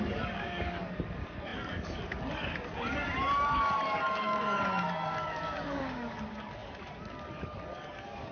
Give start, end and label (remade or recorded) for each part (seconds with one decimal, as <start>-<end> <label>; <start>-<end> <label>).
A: 0.0-8.3 remade